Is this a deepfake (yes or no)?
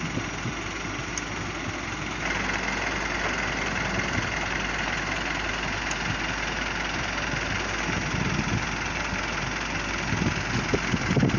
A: no